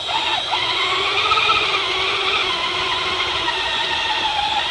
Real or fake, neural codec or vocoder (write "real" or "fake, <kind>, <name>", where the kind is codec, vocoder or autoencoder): fake, vocoder, Vocos